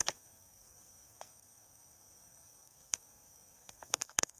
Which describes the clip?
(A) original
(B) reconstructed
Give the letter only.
B